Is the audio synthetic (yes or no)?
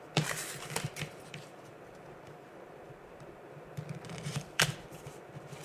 yes